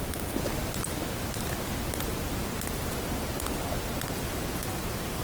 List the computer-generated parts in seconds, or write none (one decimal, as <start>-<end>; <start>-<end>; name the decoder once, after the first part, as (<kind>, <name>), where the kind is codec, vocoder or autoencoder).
none